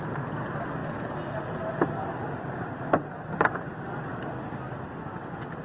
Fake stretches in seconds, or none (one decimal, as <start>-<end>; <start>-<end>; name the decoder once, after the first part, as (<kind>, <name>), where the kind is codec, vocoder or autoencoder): none